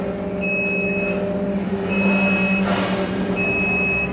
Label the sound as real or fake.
real